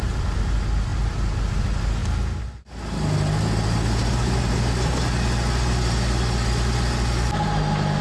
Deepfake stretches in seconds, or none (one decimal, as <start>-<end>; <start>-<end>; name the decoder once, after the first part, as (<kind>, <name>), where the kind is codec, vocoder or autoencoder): none